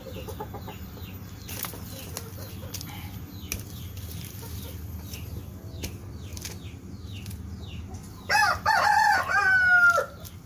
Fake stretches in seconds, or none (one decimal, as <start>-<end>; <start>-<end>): none